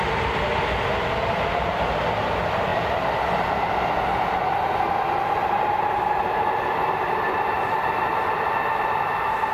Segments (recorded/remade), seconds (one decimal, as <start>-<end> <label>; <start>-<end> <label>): 0.0-1.7 recorded; 1.7-2.3 remade; 2.3-2.7 recorded; 2.7-3.3 remade; 3.3-5.4 recorded; 5.4-7.9 remade; 7.9-9.5 recorded